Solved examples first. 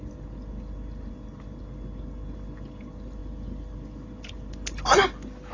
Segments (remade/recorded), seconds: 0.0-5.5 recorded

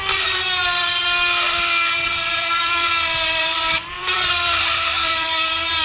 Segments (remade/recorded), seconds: 0.0-1.0 remade; 1.0-2.0 recorded; 2.0-2.9 remade; 2.9-3.4 recorded; 3.4-5.8 remade

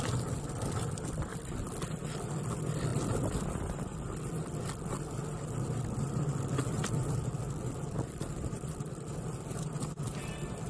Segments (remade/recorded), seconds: 0.0-1.3 remade; 1.3-2.5 recorded; 2.5-2.9 remade; 2.9-6.1 recorded; 6.1-10.7 remade

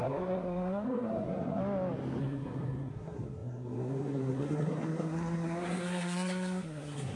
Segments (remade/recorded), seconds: 0.0-1.6 remade; 1.6-2.2 recorded; 2.2-7.2 remade